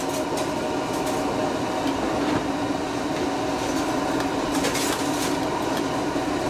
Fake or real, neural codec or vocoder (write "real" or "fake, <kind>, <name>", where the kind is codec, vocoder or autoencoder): real